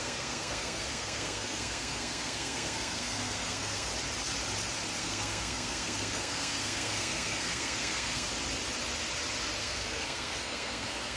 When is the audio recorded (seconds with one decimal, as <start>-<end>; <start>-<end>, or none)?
3.9-5.0; 8.3-9.6